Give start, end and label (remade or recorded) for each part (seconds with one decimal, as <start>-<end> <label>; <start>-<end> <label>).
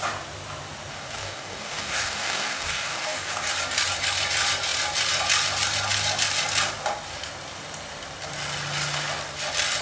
0.0-0.9 recorded; 0.9-3.5 remade; 3.5-9.8 recorded